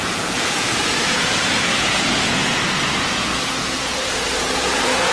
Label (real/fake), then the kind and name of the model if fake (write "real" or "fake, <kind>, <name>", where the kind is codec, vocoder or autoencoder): fake, vocoder, Vocos